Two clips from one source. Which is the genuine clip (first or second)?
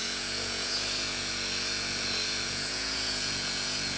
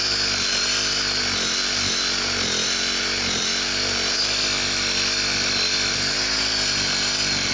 second